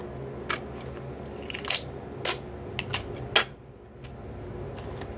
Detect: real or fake real